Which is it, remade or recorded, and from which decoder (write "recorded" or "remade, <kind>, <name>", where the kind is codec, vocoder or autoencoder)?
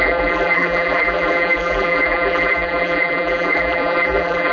remade, vocoder, BigVGAN v2